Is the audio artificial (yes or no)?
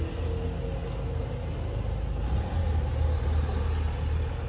no